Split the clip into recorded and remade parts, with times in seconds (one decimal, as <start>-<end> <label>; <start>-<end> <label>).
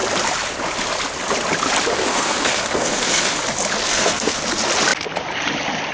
0.0-1.9 recorded; 1.9-3.4 remade; 3.4-3.9 recorded; 3.9-4.4 remade; 4.4-5.9 recorded